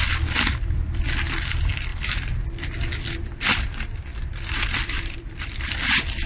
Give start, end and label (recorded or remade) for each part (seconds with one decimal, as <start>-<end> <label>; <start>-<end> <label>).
0.0-1.9 remade; 1.9-3.1 recorded; 3.1-6.3 remade